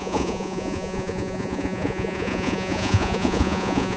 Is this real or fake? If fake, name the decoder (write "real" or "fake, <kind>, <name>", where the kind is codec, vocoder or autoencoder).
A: fake, vocoder, Vocos